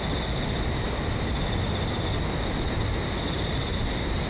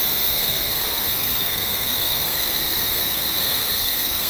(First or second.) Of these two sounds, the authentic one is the first